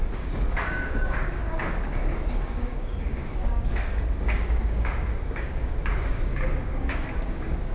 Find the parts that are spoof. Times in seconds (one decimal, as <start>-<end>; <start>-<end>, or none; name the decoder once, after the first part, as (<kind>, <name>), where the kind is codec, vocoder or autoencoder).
0.0-7.7 (codec, DAC)